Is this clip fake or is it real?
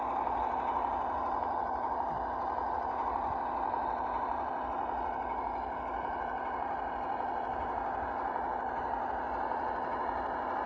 real